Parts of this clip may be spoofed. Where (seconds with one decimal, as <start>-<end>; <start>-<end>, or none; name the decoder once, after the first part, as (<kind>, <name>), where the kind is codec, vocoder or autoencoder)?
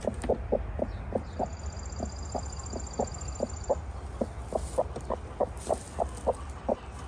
none